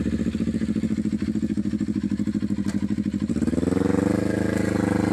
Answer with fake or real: real